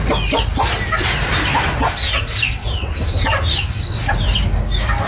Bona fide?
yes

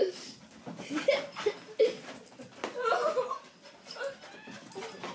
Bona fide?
yes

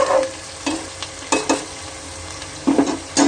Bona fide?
yes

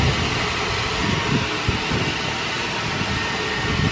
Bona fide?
yes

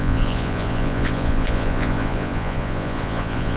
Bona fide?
no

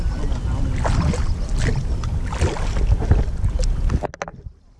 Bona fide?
yes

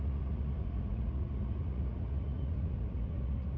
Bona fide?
no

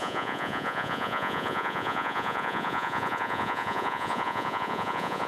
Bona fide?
no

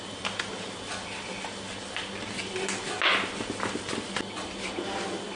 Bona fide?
yes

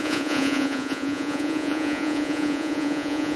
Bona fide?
no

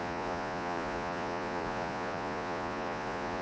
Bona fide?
no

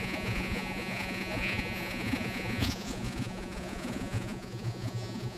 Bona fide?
no